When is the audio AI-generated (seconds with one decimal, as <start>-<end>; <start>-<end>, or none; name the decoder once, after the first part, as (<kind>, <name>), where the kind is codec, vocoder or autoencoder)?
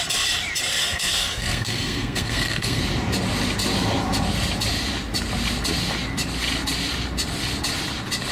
0.8-2.8 (codec, SNAC)